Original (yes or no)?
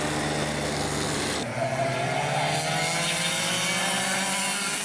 yes